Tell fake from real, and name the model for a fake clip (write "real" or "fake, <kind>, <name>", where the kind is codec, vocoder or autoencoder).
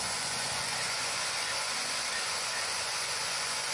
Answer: fake, vocoder, Vocos